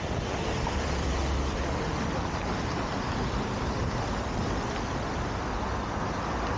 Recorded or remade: recorded